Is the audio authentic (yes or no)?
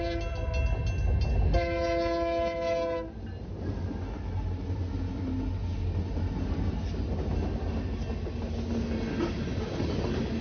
yes